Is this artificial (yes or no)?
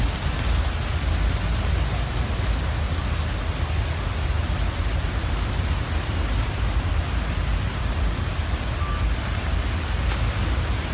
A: no